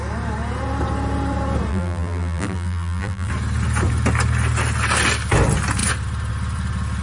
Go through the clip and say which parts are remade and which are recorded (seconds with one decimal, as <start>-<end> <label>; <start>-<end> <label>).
0.0-1.7 recorded; 1.7-3.3 remade; 3.3-7.0 recorded